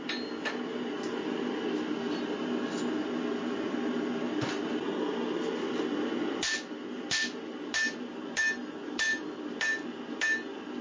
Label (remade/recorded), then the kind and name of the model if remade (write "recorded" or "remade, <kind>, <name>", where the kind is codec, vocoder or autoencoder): recorded